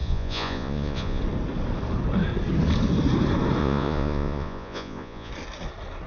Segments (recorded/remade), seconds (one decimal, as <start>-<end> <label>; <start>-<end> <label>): 0.0-1.2 remade; 1.2-3.6 recorded; 3.6-5.3 remade; 5.3-6.1 recorded